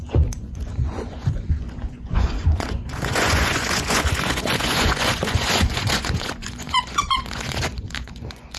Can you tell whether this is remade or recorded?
remade